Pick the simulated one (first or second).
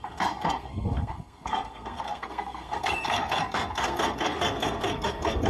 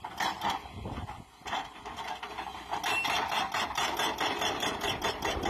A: first